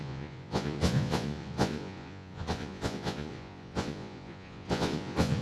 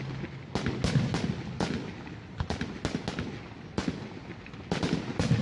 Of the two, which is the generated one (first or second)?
first